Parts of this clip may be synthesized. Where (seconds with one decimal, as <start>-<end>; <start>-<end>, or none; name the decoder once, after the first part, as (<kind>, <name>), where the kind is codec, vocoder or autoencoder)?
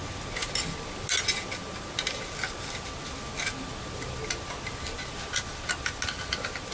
none